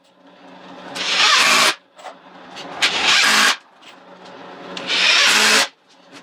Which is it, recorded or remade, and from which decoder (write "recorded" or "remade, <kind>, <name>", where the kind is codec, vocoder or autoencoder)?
recorded